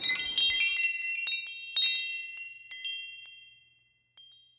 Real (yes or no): yes